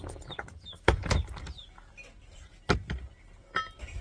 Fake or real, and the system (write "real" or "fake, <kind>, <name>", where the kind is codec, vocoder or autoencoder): real